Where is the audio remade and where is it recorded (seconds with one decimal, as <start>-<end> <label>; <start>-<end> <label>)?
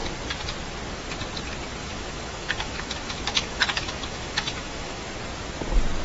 0.0-1.8 recorded; 1.8-5.0 remade; 5.0-6.0 recorded